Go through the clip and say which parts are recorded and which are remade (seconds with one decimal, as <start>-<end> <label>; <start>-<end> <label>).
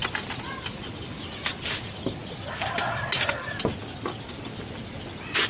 0.0-5.5 recorded